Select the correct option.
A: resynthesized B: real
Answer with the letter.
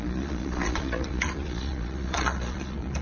A